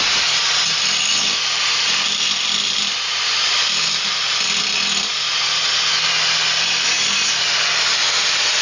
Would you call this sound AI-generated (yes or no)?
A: no